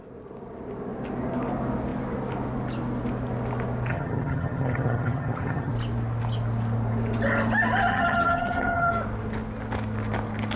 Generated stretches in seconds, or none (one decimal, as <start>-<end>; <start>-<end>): 3.9-5.7; 7.9-8.9